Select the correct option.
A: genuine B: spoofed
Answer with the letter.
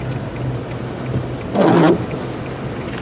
A